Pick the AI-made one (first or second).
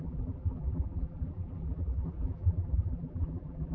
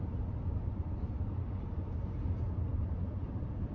first